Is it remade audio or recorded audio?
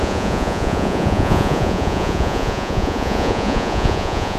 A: remade